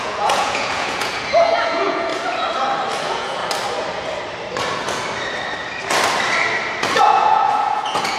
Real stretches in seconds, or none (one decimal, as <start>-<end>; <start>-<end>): 2.1-3.0; 3.4-7.0